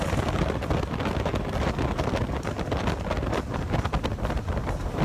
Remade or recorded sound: recorded